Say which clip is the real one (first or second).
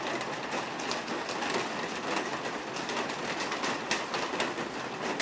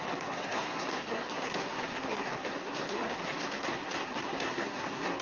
first